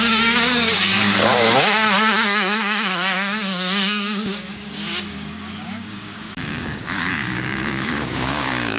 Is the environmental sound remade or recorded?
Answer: remade